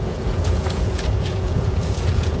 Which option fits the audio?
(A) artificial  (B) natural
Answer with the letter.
A